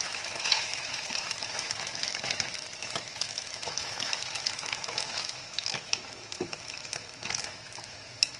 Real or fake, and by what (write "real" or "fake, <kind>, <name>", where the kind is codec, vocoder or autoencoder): fake, autoencoder, DAC-VAE